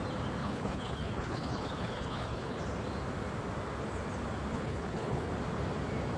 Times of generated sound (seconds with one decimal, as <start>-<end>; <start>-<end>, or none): 0.4-2.6; 4.5-5.3